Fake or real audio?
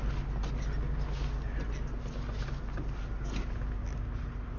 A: real